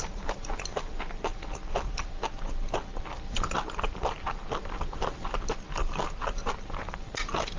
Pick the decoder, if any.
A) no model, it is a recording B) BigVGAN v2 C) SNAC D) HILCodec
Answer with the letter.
A